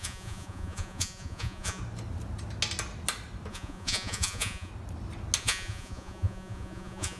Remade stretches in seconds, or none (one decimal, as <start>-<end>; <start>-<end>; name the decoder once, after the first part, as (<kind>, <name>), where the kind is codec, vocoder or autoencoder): 0.0-1.8 (vocoder, Vocos); 3.5-4.7; 5.4-7.2